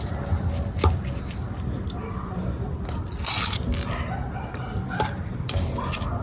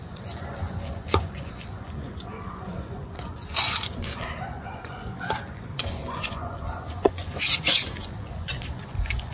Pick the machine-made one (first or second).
second